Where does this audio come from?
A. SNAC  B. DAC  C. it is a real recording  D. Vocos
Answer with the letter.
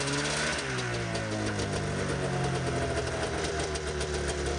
C